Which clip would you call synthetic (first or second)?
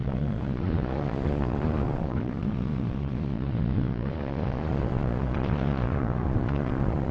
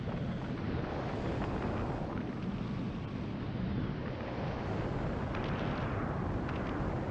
first